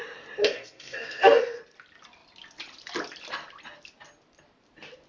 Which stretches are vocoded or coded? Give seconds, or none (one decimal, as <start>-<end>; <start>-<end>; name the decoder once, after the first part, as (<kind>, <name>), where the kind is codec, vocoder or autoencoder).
0.4-1.6 (codec, SNAC)